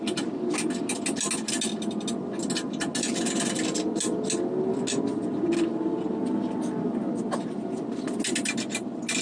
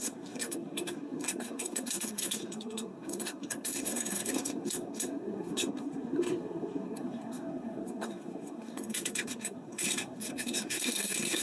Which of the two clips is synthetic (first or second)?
second